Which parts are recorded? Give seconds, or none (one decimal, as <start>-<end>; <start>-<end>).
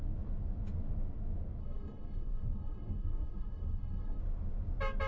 0.0-1.6; 4.2-5.1